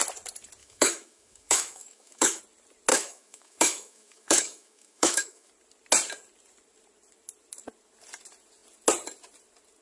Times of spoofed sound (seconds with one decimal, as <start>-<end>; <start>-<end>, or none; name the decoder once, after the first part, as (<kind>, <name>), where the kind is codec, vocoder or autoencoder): 0.6-2.4 (autoencoder, DAC-VAE); 2.9-5.5